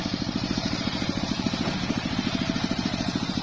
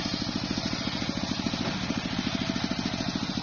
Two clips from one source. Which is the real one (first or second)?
second